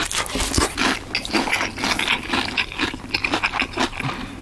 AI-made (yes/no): no